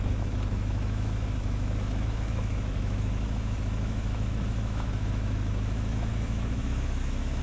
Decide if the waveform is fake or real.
fake